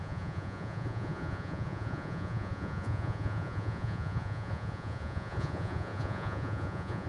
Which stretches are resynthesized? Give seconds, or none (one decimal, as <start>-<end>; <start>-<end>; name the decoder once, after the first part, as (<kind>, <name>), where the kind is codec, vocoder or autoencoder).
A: 0.0-7.1 (vocoder, Vocos)